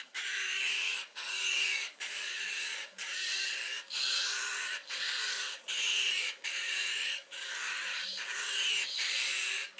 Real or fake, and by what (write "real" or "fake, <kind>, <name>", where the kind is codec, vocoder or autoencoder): fake, codec, DAC